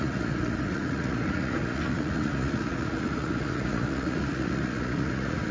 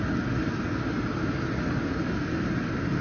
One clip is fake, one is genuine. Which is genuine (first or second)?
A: second